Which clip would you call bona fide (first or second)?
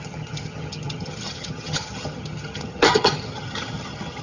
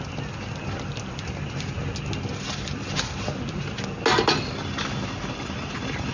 second